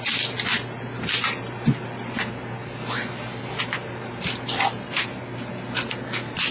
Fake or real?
real